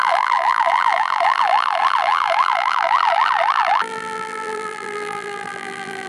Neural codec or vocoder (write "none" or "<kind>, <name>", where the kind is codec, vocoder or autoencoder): vocoder, BigVGAN v2